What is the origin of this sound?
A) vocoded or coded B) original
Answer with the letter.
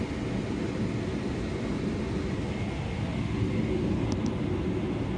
B